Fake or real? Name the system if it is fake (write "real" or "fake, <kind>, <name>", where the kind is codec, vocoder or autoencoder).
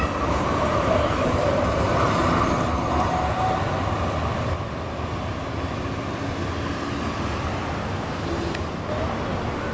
real